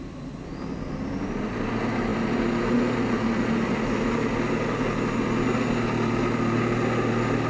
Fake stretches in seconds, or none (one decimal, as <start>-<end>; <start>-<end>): none